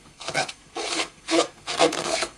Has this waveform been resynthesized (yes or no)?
yes